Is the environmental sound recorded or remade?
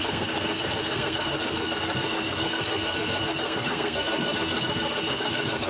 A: remade